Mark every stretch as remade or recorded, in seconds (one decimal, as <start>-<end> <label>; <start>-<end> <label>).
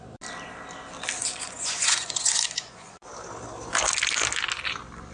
0.0-1.2 recorded; 1.2-3.1 remade; 3.1-5.1 recorded